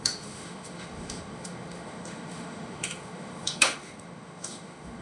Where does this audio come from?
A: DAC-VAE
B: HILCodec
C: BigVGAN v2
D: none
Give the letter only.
A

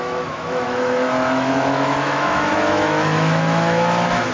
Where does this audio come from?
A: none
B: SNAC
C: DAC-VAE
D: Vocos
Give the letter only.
C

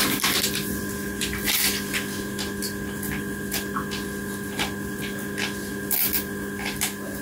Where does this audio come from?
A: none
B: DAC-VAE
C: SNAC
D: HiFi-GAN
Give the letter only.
A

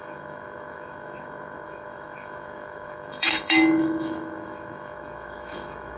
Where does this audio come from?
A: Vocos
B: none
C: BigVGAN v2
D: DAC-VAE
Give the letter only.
D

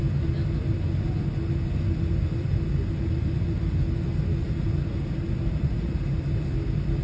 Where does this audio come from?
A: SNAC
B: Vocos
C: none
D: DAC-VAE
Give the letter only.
C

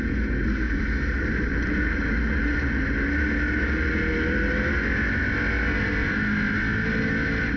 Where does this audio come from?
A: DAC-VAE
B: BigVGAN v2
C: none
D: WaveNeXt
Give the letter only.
C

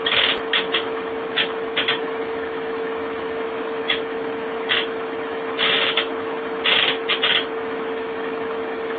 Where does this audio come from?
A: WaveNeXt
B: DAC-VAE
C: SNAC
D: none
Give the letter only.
B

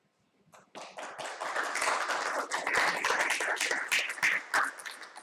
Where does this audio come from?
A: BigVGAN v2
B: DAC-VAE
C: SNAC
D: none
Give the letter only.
D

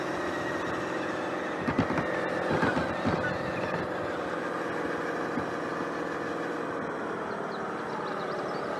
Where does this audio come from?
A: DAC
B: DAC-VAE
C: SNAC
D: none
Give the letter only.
D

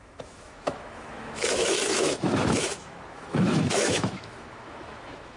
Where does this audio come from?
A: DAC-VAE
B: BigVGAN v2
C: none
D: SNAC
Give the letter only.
A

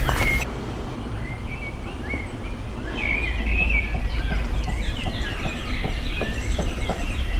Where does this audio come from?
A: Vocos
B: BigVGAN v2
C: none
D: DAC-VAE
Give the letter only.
C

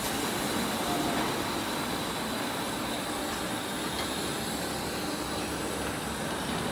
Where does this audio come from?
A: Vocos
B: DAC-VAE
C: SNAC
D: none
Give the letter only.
D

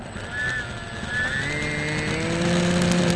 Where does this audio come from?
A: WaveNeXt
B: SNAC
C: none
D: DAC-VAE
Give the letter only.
C